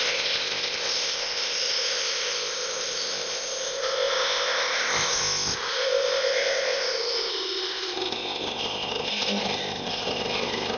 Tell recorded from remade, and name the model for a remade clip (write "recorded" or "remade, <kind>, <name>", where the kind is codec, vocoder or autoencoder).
remade, codec, ZipCodec